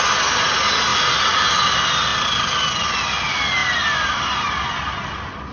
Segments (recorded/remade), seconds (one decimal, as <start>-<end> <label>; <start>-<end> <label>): 0.0-5.5 recorded